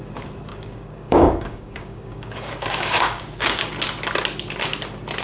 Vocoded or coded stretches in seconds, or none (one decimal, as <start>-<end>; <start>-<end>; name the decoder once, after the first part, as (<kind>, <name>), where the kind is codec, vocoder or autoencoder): 0.5-3.6 (codec, DAC)